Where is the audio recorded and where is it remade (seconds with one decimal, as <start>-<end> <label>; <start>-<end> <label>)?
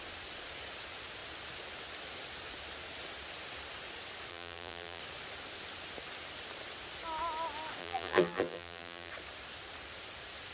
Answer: 0.0-4.3 recorded; 4.3-5.0 remade; 5.0-7.8 recorded; 7.8-9.1 remade; 9.1-10.5 recorded